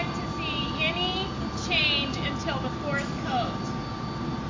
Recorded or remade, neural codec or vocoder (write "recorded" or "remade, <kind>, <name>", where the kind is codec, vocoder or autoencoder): recorded